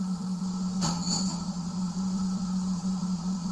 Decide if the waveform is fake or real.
fake